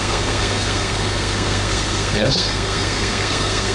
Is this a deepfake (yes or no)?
yes